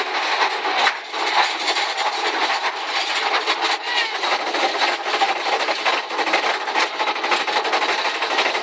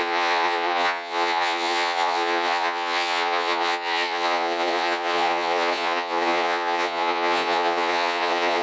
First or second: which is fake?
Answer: second